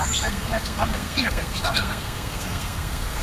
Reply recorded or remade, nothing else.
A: remade